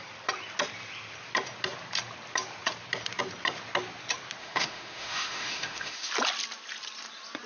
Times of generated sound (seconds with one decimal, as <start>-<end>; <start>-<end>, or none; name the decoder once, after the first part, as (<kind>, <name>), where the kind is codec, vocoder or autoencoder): 4.4-6.1 (autoencoder, DAC-VAE)